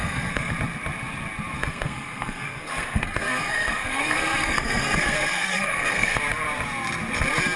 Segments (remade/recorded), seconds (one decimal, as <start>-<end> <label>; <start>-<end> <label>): 0.0-0.5 remade; 0.5-1.6 recorded; 1.6-6.2 remade; 6.2-7.6 recorded